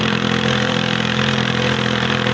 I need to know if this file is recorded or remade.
remade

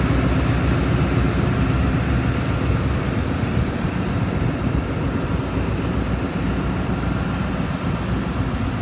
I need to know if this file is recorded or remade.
recorded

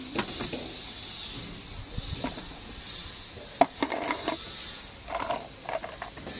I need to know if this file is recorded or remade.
recorded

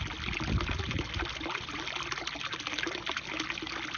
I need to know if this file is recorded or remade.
recorded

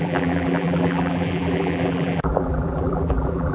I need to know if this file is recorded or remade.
remade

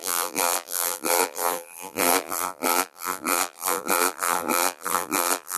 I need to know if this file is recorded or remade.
remade